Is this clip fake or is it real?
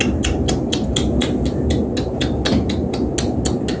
real